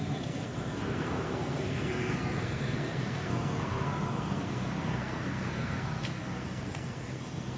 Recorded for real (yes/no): no